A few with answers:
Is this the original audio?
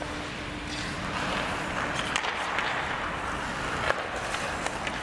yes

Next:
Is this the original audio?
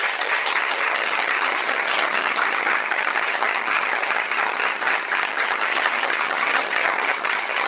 no